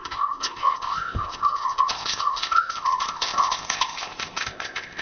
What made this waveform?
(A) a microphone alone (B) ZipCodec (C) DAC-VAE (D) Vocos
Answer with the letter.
B